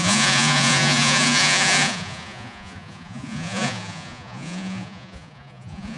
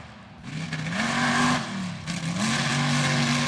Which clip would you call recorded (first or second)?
second